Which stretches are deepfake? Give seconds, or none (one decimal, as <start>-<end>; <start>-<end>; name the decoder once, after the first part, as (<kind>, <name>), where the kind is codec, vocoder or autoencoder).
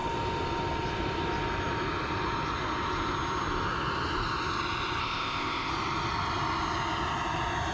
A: 5.0-5.7 (codec, ZipCodec)